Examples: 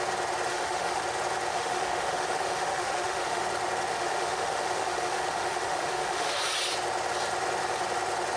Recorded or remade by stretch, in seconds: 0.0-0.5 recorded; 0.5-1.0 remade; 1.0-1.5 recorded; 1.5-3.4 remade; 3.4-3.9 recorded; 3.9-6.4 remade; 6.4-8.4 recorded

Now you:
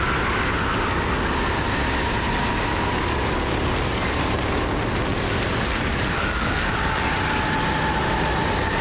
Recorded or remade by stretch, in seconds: 0.0-2.7 recorded; 2.7-4.8 remade; 4.8-5.5 recorded; 5.5-7.0 remade; 7.0-8.8 recorded

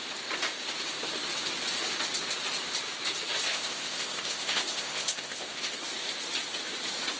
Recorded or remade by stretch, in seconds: 0.0-3.5 recorded; 3.5-5.7 remade; 5.7-7.2 recorded

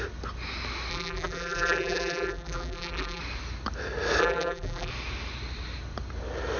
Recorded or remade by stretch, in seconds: 0.0-0.9 recorded; 0.9-3.2 remade; 3.2-4.2 recorded; 4.2-4.9 remade; 4.9-6.6 recorded

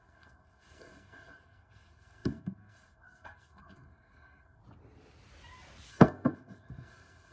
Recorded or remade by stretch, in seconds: 0.0-4.6 remade; 4.6-5.9 recorded; 5.9-7.3 remade